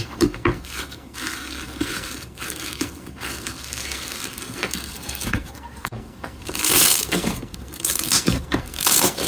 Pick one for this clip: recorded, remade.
remade